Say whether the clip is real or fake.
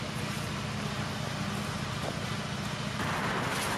real